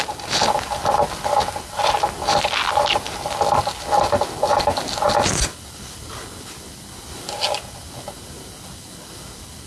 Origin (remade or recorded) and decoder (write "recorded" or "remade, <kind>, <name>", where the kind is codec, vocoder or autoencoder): recorded